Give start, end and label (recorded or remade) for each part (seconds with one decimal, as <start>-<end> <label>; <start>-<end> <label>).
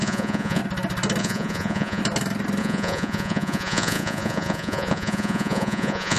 0.0-0.6 remade; 0.6-1.2 recorded; 1.2-2.0 remade; 2.0-2.6 recorded; 2.6-6.2 remade